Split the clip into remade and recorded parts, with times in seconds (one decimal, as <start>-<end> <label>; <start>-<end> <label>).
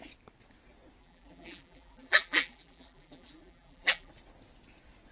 0.0-1.0 recorded; 1.0-4.1 remade; 4.1-5.1 recorded